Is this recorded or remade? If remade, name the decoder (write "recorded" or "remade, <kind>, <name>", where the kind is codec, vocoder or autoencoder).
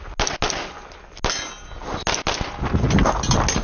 recorded